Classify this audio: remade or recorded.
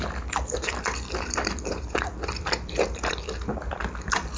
remade